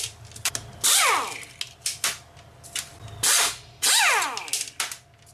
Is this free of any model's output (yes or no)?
yes